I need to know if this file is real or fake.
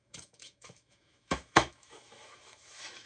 fake